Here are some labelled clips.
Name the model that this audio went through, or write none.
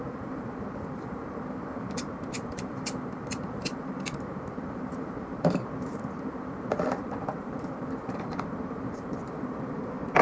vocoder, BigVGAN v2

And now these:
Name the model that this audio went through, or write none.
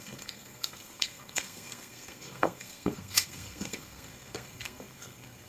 codec, SNAC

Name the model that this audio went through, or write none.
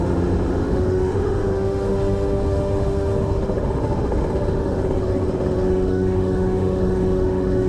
autoencoder, DAC-VAE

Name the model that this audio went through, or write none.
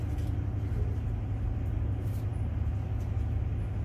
none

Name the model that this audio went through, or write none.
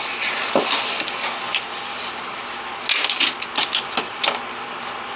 none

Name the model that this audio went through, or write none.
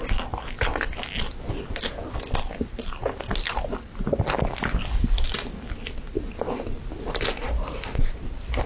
none